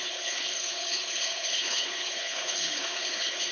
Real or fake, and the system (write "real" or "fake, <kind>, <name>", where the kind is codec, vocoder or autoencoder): fake, codec, HILCodec